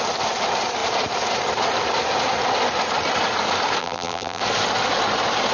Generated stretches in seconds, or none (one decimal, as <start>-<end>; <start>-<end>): 3.8-4.4

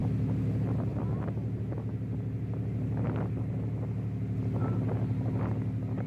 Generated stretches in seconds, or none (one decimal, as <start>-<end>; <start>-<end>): none